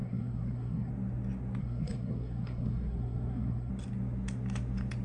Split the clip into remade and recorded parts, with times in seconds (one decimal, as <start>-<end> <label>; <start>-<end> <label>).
0.0-0.9 remade; 0.9-1.6 recorded; 1.6-3.7 remade; 3.7-5.0 recorded